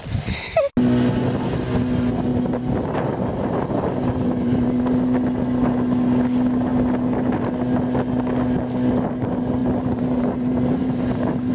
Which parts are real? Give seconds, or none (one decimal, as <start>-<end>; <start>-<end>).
0.0-2.3; 4.8-9.6